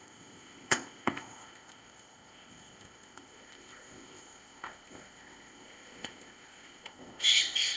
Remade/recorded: remade